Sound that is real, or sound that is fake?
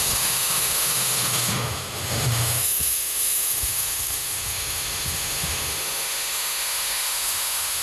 fake